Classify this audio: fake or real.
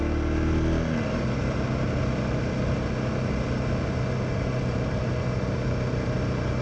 real